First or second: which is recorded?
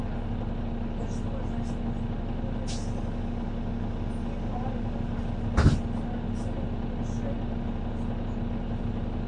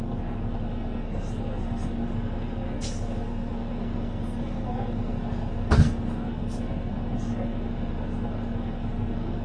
first